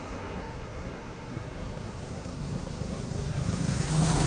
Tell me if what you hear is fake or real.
fake